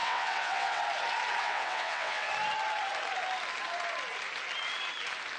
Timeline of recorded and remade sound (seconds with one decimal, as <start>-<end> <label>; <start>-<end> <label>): 0.0-0.8 remade; 0.8-1.4 recorded; 1.4-2.3 remade; 2.3-5.4 recorded